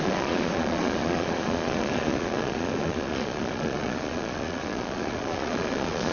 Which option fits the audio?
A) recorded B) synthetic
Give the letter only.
B